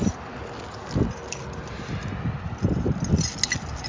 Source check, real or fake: real